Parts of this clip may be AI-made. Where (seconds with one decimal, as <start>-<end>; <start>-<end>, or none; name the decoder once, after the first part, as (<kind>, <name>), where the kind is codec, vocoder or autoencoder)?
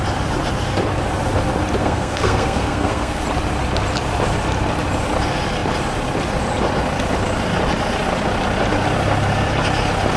1.8-3.2 (codec, SNAC)